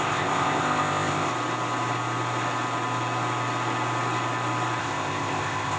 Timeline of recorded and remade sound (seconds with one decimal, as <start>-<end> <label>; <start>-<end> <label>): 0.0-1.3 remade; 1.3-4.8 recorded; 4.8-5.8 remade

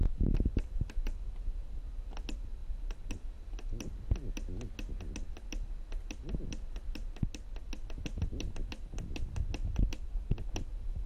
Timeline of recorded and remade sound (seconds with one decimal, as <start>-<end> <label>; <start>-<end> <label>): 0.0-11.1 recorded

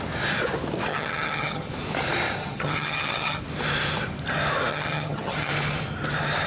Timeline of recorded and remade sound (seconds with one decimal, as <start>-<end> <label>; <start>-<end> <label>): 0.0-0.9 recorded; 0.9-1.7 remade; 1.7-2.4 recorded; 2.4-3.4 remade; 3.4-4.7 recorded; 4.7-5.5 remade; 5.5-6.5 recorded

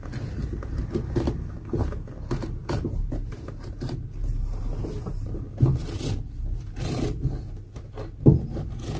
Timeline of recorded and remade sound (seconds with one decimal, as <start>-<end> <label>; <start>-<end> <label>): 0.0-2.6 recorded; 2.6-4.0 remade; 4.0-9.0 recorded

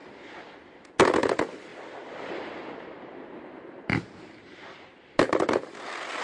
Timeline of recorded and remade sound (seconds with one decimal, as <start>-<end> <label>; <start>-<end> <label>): 0.0-6.2 recorded

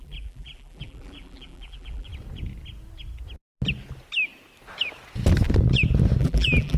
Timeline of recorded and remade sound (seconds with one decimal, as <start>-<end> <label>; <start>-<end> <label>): 0.0-2.1 remade; 2.1-6.2 recorded; 6.2-6.8 remade